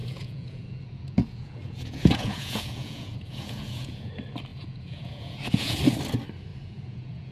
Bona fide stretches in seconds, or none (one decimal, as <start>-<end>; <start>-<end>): 4.1-4.5; 5.8-6.5

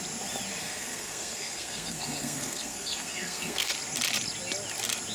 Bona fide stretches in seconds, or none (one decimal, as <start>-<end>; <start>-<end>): 0.0-0.6; 3.7-5.1